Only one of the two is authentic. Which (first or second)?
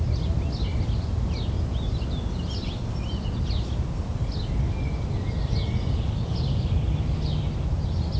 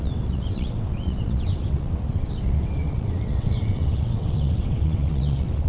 first